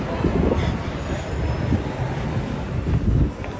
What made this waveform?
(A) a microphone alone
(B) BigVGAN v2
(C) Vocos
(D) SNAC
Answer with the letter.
A